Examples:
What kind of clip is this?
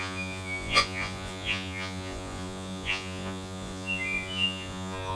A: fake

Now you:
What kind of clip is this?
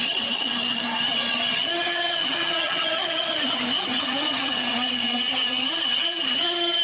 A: fake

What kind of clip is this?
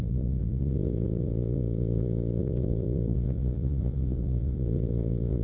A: fake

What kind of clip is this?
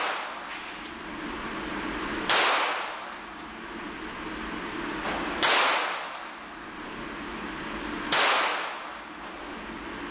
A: real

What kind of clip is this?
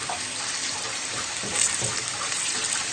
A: real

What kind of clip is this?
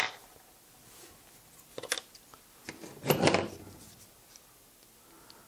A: real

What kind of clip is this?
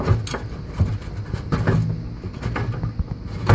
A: real